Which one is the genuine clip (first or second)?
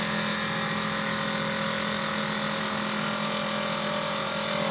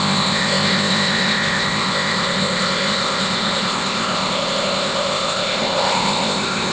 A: first